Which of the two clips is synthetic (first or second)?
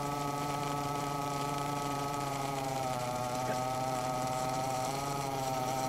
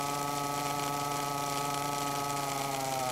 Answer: first